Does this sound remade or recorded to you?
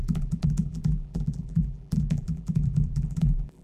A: remade